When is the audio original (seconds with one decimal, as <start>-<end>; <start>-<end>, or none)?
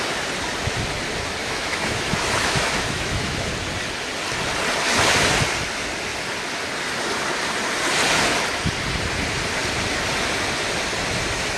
0.0-1.4; 3.5-11.6